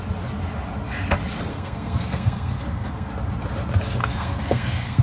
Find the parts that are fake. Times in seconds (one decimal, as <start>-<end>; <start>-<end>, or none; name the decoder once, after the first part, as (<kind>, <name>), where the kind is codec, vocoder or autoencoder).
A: 1.5-3.1 (codec, SNAC); 4.0-5.0